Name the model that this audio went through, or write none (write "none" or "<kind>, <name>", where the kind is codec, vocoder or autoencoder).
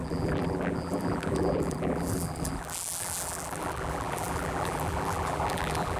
vocoder, BigVGAN v2